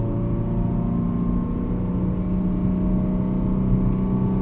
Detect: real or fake real